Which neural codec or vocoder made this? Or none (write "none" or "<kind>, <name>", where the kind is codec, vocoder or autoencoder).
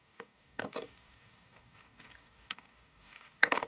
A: codec, DAC